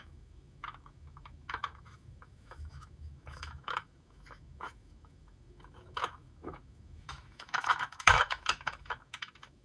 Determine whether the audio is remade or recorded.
remade